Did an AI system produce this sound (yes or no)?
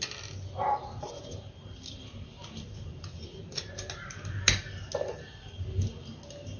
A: no